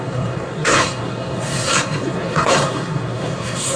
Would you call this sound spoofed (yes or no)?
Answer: yes